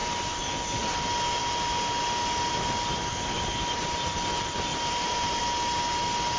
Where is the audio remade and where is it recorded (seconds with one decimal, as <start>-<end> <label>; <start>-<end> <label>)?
0.0-4.7 recorded; 4.7-5.4 remade; 5.4-6.4 recorded